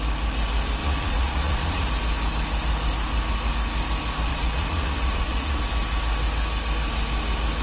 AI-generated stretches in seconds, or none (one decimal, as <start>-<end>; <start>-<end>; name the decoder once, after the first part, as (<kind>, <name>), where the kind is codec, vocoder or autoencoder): 0.8-1.9 (vocoder, Vocos); 4.3-5.6